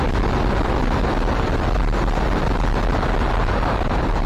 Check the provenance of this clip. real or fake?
real